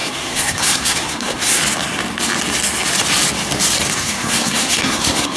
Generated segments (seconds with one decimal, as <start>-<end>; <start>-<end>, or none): 0.0-1.6; 4.0-5.4